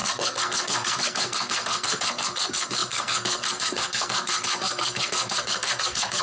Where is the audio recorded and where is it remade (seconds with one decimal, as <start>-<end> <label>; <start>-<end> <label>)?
0.0-6.2 remade